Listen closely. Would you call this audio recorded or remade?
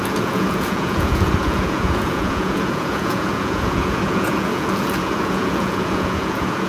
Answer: remade